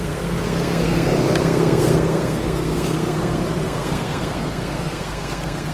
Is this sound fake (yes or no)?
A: yes